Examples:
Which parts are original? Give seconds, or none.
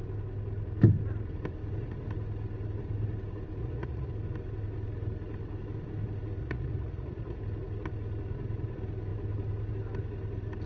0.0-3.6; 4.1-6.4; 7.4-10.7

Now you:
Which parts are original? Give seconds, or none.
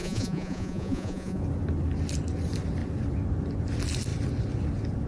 1.4-5.1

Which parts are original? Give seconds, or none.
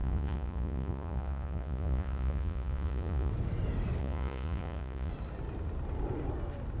3.3-4.0; 5.1-6.8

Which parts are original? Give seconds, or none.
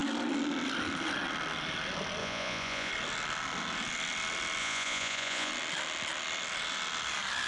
0.0-2.2; 2.9-4.6; 5.5-7.5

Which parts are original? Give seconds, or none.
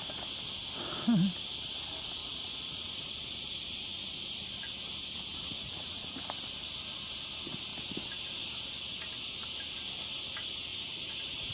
0.0-2.2; 3.1-5.3; 6.4-10.7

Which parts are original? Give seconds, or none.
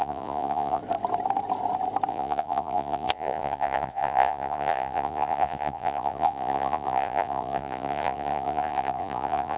0.8-2.1